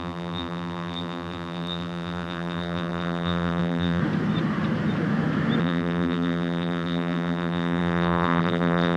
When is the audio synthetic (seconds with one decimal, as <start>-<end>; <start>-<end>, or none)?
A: 0.0-4.0; 5.6-9.0